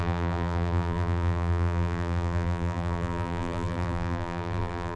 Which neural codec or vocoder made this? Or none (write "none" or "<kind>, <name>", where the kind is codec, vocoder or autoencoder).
vocoder, BigVGAN v2